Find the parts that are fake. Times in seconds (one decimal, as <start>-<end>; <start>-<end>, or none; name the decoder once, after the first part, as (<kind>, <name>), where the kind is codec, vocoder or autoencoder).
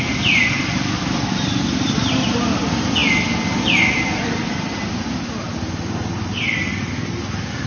none